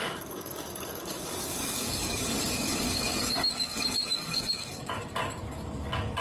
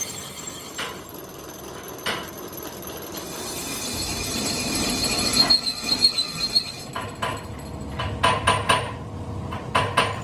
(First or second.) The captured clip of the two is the second